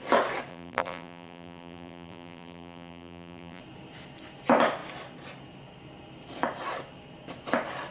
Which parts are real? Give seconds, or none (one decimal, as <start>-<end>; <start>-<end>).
0.0-0.5; 3.6-7.9